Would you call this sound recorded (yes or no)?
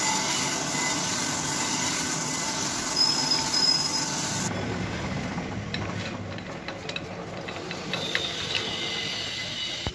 yes